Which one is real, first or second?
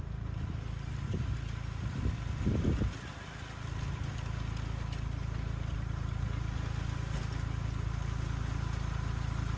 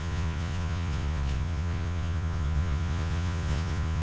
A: first